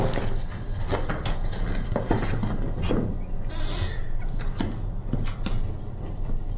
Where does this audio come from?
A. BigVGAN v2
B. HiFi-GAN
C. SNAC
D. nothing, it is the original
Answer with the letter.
D